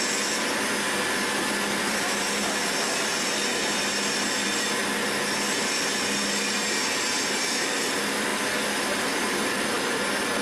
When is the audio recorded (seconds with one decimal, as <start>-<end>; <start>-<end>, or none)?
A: 4.8-7.2; 8.3-8.8